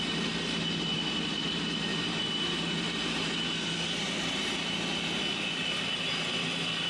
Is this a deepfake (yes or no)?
no